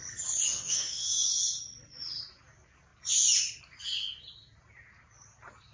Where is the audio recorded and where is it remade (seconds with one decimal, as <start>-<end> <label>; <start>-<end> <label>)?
0.0-0.5 recorded; 0.5-1.4 remade; 1.4-5.7 recorded